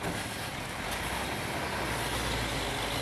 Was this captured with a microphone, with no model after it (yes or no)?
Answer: yes